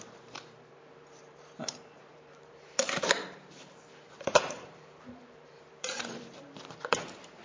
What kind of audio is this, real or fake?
fake